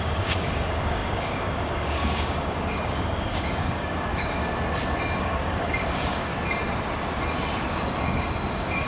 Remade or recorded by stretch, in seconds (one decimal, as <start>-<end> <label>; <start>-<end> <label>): 0.0-4.4 remade; 4.4-5.2 recorded; 5.2-6.3 remade; 6.3-7.7 recorded; 7.7-8.9 remade